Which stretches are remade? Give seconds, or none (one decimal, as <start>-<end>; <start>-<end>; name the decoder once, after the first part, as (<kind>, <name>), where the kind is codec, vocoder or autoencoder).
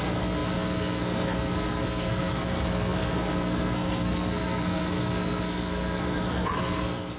0.0-7.2 (codec, SNAC)